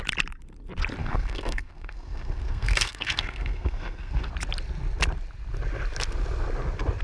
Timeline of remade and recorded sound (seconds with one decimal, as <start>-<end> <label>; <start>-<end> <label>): 0.0-1.0 recorded; 1.0-4.3 remade; 4.3-7.0 recorded